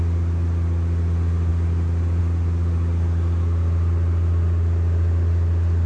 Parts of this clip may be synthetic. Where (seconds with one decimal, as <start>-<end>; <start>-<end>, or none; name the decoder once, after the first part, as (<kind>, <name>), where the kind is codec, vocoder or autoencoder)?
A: none

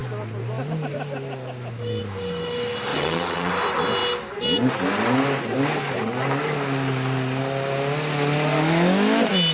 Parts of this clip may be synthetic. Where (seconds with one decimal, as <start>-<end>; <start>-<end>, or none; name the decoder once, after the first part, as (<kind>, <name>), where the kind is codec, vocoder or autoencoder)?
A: 2.9-3.5 (vocoder, WaveNeXt)

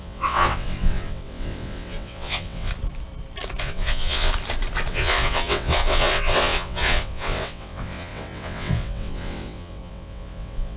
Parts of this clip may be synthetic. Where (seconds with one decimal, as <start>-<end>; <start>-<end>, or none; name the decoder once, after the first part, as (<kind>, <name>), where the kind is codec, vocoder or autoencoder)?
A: 0.0-2.7 (vocoder, WaveNeXt); 3.6-4.3; 4.9-10.8

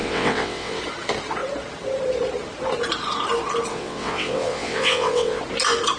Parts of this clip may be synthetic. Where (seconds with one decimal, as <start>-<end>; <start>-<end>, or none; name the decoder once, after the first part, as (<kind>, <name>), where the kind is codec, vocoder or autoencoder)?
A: 0.0-0.8 (vocoder, WaveNeXt); 3.7-5.4